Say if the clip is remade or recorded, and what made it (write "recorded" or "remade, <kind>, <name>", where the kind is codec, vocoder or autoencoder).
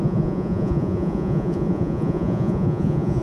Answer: remade, vocoder, Vocos